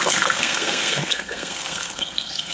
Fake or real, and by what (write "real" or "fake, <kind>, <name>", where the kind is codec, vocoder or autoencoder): fake, codec, SNAC